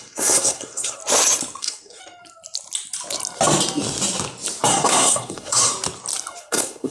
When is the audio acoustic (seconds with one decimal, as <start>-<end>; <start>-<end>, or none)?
1.0-1.6; 2.0-4.7; 5.7-6.4